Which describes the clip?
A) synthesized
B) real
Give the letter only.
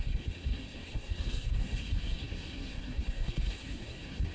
A